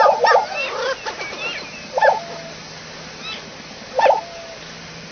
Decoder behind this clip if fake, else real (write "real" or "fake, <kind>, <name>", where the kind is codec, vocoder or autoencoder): real